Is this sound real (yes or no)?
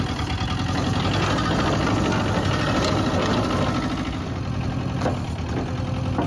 yes